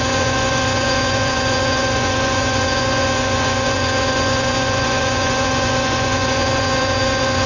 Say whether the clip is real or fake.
fake